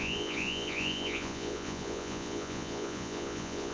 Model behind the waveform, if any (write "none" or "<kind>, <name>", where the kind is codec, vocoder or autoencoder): vocoder, Vocos